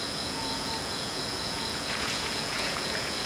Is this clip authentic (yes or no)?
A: no